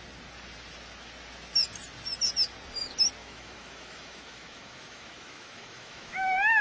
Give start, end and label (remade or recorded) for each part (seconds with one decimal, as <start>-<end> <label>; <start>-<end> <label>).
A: 0.0-3.2 recorded; 3.2-6.6 remade